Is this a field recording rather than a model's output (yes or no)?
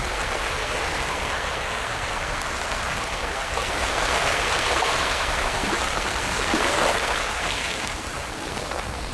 no